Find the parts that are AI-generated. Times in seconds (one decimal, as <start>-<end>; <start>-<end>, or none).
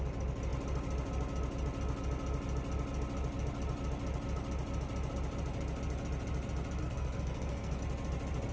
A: 6.8-7.8